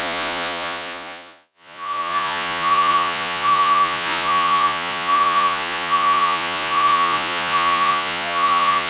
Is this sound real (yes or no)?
no